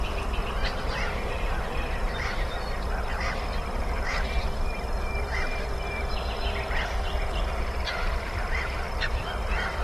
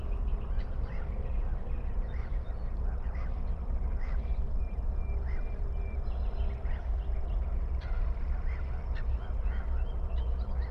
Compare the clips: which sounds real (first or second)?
second